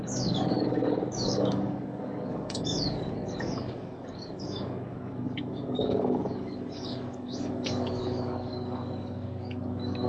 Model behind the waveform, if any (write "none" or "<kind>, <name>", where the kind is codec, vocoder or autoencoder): codec, DAC